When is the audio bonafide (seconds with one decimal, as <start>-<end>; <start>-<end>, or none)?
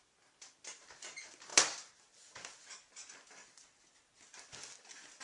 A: 0.0-5.2